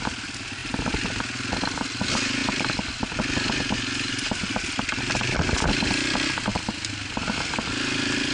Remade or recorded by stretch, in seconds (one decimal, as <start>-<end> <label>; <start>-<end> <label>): 0.0-2.4 recorded; 2.4-5.0 remade; 5.0-8.3 recorded